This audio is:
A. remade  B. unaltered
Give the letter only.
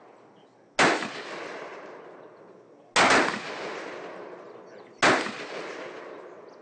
B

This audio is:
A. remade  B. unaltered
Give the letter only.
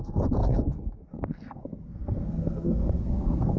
A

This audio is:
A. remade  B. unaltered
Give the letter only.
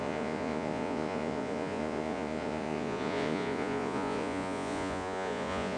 A